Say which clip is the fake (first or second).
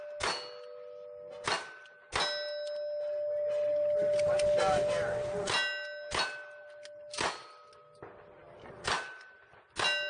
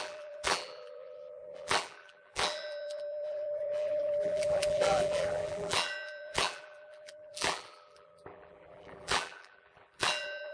second